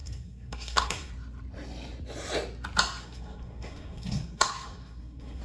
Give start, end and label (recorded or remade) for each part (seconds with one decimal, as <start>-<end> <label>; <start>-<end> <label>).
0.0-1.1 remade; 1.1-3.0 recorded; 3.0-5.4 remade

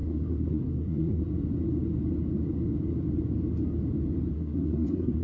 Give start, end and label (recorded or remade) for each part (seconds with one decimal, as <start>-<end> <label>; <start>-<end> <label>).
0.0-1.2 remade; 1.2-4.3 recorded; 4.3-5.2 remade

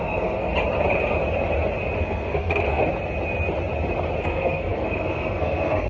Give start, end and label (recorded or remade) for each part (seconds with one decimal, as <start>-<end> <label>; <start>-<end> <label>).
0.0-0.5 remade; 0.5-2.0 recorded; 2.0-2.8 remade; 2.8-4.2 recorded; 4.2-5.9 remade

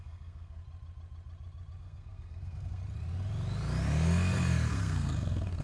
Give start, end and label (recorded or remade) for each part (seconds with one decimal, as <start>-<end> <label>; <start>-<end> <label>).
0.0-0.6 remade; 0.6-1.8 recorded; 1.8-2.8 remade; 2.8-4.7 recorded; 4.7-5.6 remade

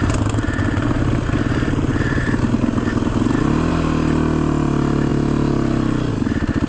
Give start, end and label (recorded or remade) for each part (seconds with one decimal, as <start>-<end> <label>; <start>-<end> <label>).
0.0-6.7 recorded

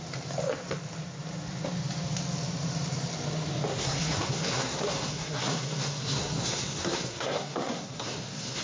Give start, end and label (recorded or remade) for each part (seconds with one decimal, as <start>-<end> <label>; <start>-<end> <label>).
0.0-3.7 recorded; 3.7-8.6 remade

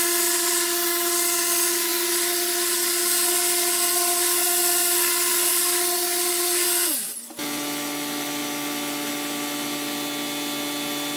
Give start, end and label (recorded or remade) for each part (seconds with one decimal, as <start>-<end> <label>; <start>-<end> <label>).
0.0-11.2 recorded